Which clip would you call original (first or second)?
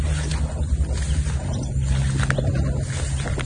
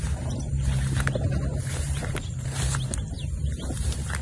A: first